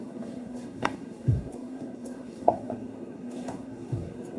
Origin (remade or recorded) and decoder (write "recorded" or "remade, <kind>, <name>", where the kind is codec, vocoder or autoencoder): remade, codec, SNAC